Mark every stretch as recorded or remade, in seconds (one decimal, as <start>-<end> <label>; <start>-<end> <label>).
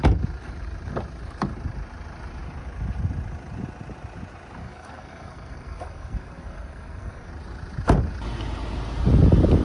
0.0-4.6 recorded; 4.6-7.3 remade; 7.3-9.6 recorded